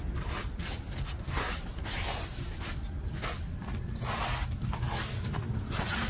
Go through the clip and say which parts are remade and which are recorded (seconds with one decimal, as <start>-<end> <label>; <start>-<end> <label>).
0.0-6.1 recorded

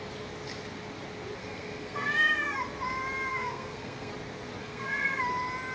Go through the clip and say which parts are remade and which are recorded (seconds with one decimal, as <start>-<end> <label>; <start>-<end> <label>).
0.0-1.4 recorded; 1.4-2.6 remade; 2.6-3.3 recorded; 3.3-4.1 remade; 4.1-4.6 recorded; 4.6-5.2 remade; 5.2-5.7 recorded

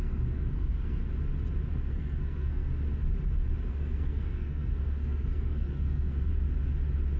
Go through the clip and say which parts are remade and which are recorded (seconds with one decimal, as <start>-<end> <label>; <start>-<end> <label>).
0.0-1.0 remade; 1.0-1.7 recorded; 1.7-2.7 remade; 2.7-3.7 recorded; 3.7-6.3 remade; 6.3-7.2 recorded

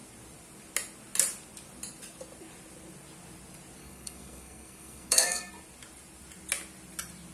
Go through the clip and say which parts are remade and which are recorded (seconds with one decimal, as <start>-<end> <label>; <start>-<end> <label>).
0.0-3.8 recorded; 3.8-5.5 remade; 5.5-7.3 recorded

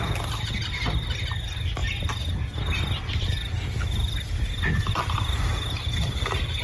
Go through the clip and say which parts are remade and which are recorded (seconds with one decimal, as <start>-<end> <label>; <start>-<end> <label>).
0.0-6.6 recorded

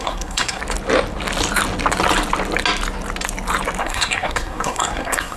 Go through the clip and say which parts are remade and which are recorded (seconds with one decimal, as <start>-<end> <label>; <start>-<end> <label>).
0.0-0.6 remade; 0.6-3.8 recorded; 3.8-5.4 remade

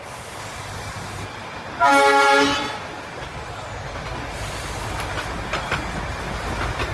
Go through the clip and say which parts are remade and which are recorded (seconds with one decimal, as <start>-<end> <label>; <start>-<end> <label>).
0.0-6.9 recorded

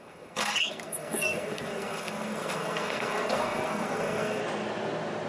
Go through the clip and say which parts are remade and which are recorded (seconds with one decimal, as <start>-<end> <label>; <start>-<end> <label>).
0.0-4.4 remade; 4.4-5.3 recorded